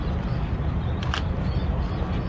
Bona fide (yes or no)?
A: yes